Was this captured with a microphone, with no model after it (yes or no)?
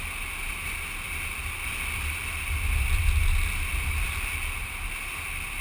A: yes